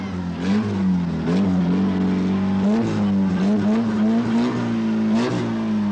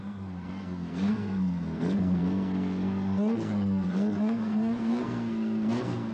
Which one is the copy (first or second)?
second